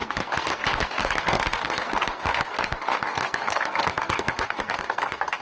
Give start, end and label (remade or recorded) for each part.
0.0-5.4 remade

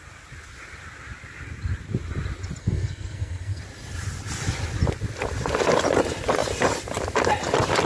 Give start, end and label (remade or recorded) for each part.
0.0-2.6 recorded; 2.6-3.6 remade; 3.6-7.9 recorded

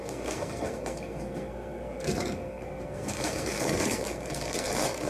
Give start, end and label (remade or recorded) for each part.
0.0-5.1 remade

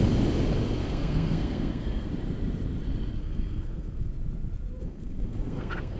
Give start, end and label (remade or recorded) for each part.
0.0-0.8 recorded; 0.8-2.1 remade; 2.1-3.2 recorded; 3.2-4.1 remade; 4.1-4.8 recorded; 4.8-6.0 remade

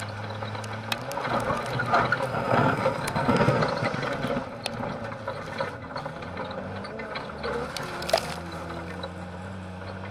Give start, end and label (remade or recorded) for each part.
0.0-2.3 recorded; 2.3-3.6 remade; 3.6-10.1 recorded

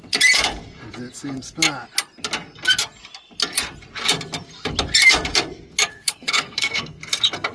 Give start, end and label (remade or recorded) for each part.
0.0-5.9 recorded; 5.9-7.0 remade; 7.0-7.5 recorded

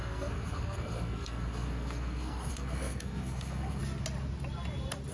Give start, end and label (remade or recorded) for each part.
0.0-3.8 remade; 3.8-5.1 recorded